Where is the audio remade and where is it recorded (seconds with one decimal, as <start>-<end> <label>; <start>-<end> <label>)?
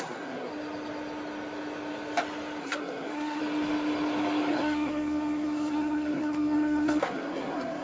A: 0.0-0.5 remade; 0.5-2.6 recorded; 2.6-3.4 remade; 3.4-4.5 recorded; 4.5-7.8 remade